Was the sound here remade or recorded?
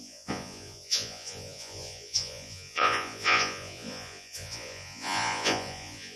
remade